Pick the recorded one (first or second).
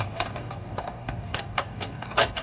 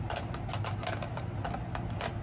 second